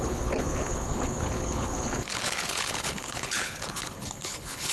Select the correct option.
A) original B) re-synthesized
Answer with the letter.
B